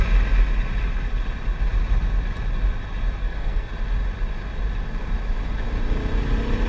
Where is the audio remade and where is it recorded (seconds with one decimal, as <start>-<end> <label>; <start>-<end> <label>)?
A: 0.0-3.2 recorded; 3.2-3.7 remade; 3.7-6.7 recorded